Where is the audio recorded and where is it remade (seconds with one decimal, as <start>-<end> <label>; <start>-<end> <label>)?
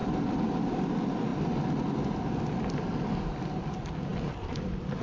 0.0-5.0 recorded